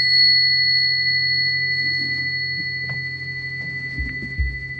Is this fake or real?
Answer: real